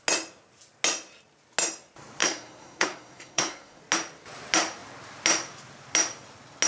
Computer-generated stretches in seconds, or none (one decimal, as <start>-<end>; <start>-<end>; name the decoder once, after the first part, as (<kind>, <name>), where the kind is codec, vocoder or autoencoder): 2.2-3.8 (codec, SNAC)